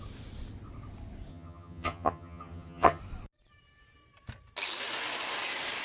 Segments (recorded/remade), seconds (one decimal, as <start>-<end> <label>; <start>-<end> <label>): 0.0-1.3 recorded; 1.3-3.0 remade; 3.0-5.8 recorded